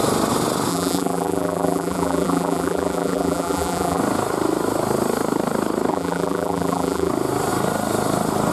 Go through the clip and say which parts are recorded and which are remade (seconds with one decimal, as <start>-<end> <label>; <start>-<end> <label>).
0.0-0.7 recorded; 0.7-4.0 remade; 4.0-5.9 recorded; 5.9-7.1 remade; 7.1-8.5 recorded